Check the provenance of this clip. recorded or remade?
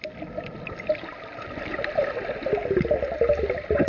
recorded